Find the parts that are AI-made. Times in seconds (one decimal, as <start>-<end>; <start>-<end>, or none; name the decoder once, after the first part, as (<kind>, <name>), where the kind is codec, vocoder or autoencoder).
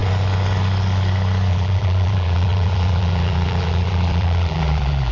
1.5-5.1 (vocoder, BigVGAN v2)